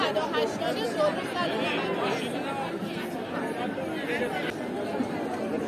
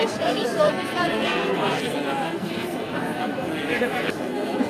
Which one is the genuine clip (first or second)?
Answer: first